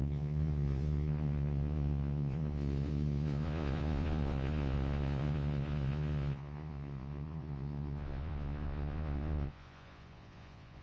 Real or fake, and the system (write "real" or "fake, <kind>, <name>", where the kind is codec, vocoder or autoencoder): fake, vocoder, Vocos